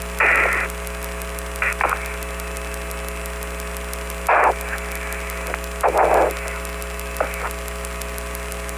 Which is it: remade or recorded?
recorded